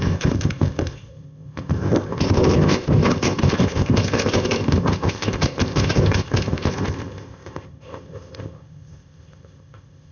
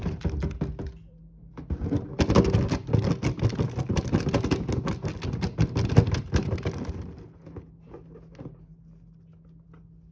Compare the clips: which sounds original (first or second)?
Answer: second